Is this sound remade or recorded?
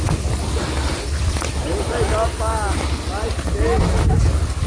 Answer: recorded